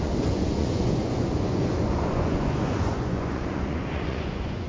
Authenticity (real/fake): fake